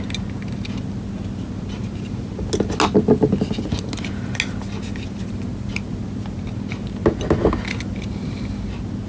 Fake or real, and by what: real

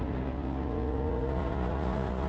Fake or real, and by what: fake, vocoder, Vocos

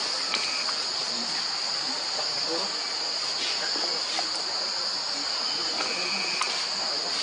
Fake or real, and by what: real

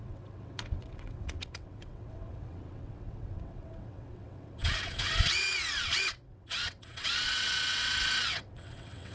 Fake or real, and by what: fake, vocoder, WaveNeXt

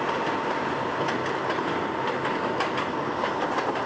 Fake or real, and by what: real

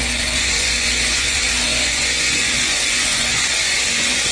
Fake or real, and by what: fake, vocoder, Vocos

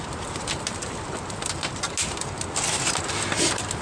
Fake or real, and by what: real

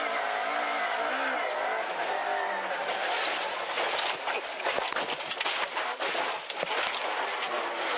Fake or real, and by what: real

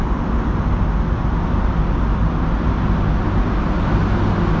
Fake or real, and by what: real